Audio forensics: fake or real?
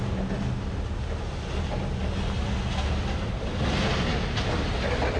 real